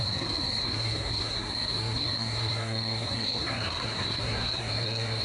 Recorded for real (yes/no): no